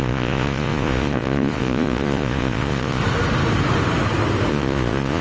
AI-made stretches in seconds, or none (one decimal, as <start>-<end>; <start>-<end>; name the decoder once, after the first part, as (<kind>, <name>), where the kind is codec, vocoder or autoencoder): 0.0-3.0 (vocoder, Vocos); 4.5-5.2